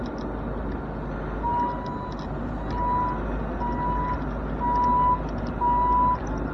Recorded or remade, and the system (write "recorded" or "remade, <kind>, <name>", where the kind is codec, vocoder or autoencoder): recorded